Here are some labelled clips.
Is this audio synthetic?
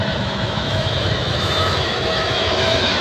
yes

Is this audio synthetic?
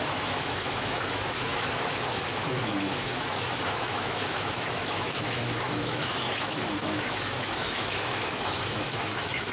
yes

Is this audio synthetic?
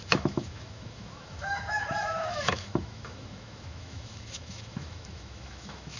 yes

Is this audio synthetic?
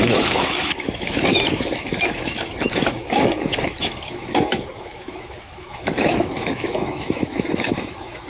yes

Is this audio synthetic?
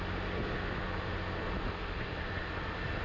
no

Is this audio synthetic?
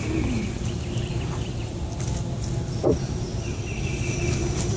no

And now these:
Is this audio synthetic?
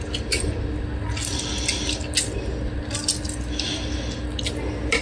no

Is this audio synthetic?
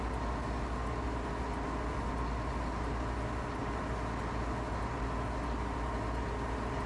no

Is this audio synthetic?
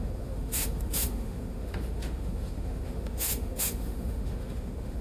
yes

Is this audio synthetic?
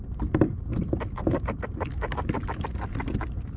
no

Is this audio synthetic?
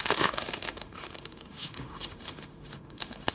yes